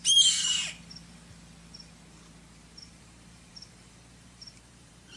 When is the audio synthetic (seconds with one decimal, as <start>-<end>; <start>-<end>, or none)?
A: 0.0-0.6; 2.8-5.2